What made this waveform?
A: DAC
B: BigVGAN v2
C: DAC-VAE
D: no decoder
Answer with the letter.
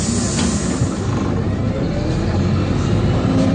D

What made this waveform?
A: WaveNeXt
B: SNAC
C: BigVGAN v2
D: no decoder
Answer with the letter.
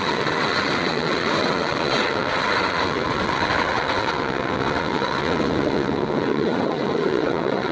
A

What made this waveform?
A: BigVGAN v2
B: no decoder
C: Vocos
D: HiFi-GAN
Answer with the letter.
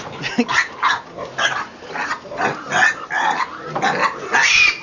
B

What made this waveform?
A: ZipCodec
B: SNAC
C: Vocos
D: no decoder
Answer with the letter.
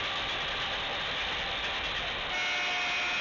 D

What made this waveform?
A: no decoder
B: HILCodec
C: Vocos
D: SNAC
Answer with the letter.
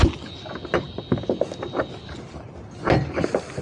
A